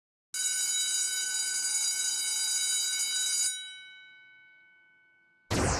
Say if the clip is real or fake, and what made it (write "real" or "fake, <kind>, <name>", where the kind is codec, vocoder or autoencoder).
real